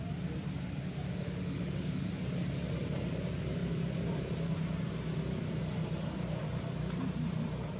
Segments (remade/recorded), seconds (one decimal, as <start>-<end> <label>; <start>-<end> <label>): 0.0-1.1 recorded; 1.1-2.1 remade; 2.1-7.8 recorded